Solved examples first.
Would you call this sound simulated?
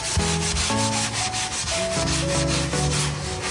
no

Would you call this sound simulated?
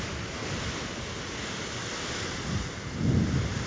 no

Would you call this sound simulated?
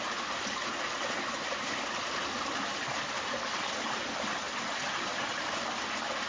no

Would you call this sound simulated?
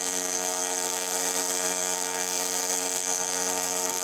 yes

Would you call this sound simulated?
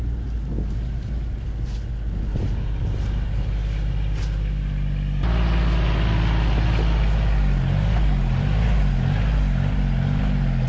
no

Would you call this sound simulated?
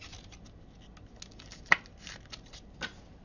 no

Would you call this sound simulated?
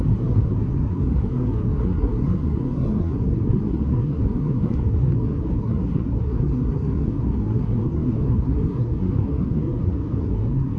yes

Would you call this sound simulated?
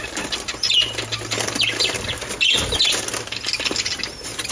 no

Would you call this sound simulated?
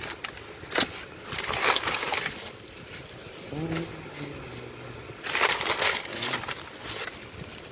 no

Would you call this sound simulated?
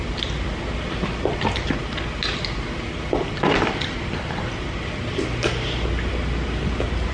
no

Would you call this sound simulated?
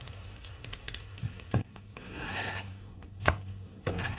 yes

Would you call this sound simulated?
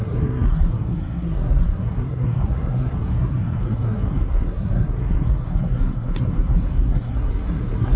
yes